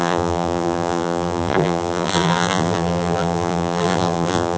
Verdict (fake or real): fake